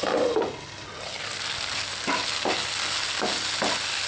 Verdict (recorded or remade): recorded